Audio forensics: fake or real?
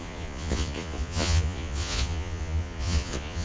fake